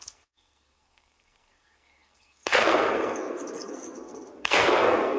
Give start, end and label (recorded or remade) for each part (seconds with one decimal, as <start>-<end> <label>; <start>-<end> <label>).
0.0-5.2 remade